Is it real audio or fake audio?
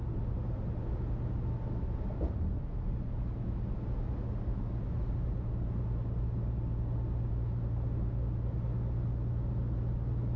real